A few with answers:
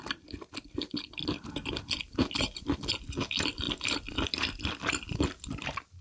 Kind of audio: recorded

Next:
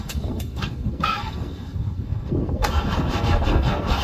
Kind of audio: remade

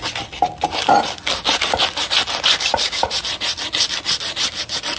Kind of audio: recorded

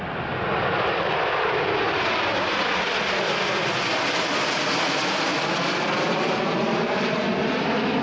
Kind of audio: recorded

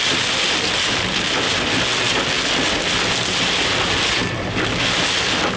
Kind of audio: recorded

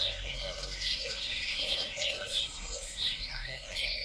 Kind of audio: remade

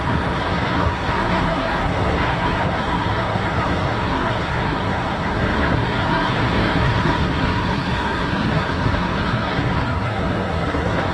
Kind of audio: remade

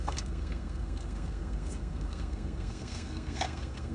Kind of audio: remade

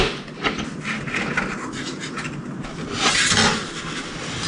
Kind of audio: recorded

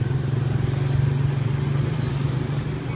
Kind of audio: recorded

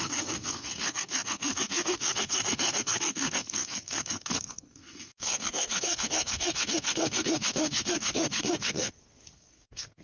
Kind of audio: remade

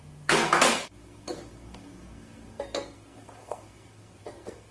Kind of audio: remade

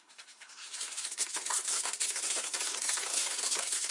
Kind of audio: remade